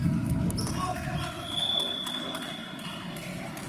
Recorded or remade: recorded